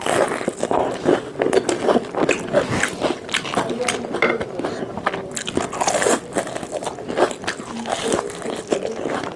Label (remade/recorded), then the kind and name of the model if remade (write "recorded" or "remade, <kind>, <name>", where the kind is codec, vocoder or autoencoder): recorded